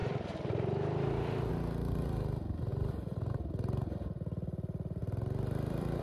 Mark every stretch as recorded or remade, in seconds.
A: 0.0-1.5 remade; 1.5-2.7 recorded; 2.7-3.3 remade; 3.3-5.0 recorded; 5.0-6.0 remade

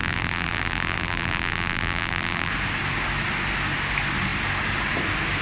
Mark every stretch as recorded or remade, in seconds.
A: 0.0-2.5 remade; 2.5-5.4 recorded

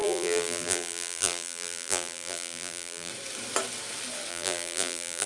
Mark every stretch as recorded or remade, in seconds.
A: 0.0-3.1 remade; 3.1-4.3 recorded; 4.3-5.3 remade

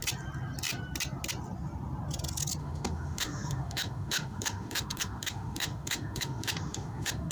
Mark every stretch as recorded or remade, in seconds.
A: 0.0-2.6 recorded; 2.6-7.3 remade

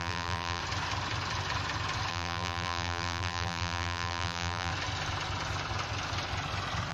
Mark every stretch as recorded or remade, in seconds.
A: 0.0-0.6 remade; 0.6-2.1 recorded; 2.1-4.7 remade; 4.7-6.9 recorded

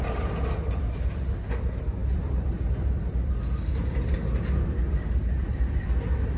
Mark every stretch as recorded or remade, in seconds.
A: 0.0-6.4 recorded